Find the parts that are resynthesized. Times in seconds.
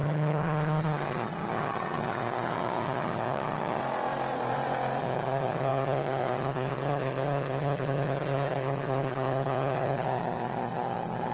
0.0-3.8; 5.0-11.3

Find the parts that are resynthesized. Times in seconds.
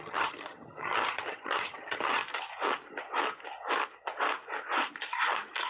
0.0-2.2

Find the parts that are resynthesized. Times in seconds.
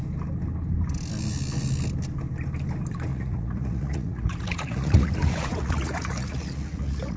3.1-7.2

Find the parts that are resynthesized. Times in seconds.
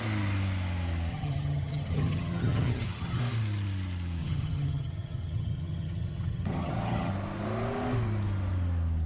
1.1-3.2; 4.2-7.1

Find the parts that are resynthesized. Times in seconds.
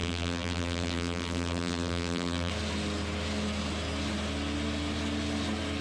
0.0-2.5